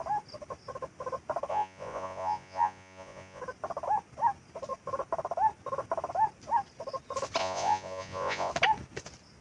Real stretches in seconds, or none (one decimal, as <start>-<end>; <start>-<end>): 0.0-1.5; 3.4-7.4; 8.5-9.4